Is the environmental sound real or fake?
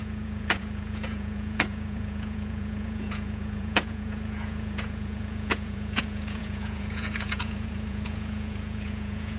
fake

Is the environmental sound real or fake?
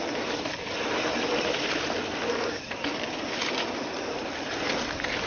real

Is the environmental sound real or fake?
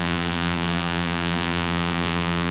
fake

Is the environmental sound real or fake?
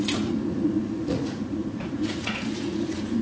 fake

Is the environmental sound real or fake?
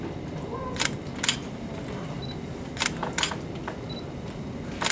real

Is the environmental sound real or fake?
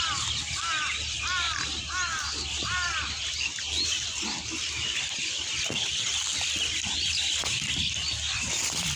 real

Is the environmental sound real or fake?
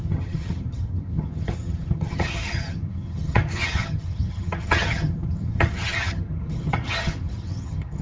fake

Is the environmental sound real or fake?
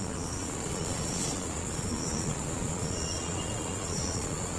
fake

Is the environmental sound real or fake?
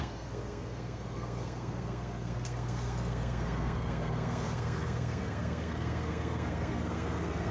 fake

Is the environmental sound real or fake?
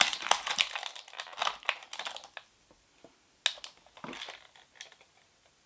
real